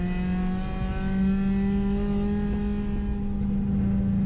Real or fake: real